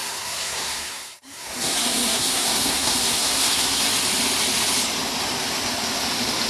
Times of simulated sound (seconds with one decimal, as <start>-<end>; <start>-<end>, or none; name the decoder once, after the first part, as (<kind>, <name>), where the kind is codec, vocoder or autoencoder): 0.0-3.9 (codec, SNAC)

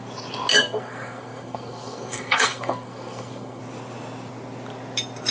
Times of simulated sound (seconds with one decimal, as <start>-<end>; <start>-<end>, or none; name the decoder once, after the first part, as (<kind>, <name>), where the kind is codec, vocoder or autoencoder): 0.5-3.6 (codec, SNAC)

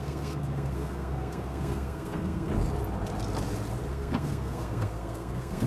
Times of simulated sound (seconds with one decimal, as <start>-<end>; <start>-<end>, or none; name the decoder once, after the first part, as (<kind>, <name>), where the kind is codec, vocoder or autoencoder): 0.0-2.5 (codec, SNAC); 3.9-5.7